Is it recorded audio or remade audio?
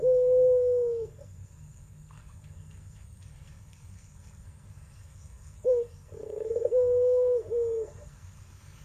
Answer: remade